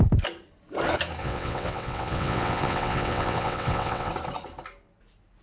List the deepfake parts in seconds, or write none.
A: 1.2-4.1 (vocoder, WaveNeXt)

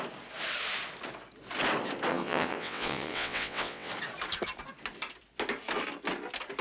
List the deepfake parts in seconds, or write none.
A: 2.1-3.9 (vocoder, WaveNeXt)

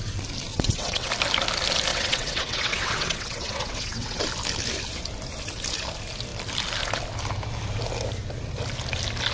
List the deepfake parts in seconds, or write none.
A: 0.5-1.1 (vocoder, WaveNeXt); 1.9-4.2

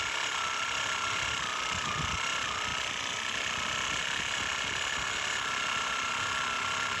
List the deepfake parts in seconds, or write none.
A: none

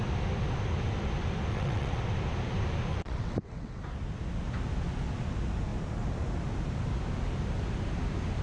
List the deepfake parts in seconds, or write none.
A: 1.5-2.0 (vocoder, WaveNeXt); 2.9-3.8

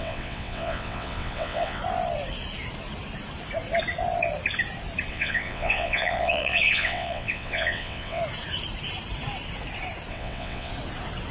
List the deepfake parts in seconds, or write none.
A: 0.0-1.8 (vocoder, WaveNeXt); 5.1-8.2; 10.1-10.7